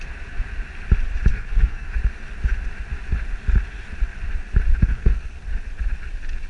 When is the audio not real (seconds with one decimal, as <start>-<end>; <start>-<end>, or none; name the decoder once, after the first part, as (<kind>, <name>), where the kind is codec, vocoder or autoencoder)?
1.3-1.9 (codec, SNAC); 4.8-5.3